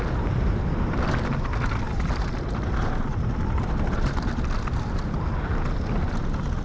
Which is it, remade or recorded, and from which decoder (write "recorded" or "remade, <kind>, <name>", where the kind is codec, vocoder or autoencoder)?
recorded